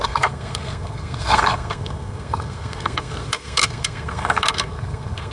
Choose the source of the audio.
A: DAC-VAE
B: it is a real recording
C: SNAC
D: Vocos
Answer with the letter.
C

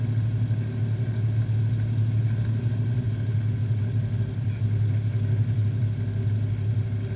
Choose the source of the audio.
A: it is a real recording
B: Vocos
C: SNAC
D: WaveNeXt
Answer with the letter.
A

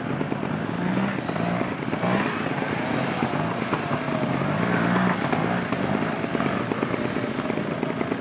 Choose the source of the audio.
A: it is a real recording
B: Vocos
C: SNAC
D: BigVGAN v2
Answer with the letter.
A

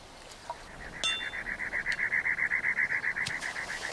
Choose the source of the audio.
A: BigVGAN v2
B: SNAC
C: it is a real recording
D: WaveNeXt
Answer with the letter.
C